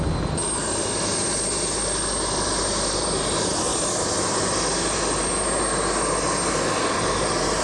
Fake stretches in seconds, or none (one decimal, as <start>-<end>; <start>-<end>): none

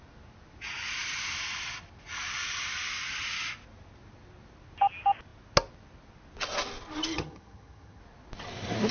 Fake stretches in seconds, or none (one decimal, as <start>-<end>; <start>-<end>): 7.1-8.0